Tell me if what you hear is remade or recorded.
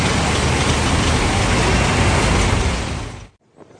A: recorded